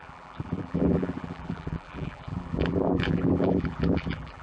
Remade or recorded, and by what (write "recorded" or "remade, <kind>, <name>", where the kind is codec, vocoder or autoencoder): remade, vocoder, BigVGAN v2